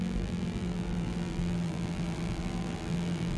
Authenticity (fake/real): fake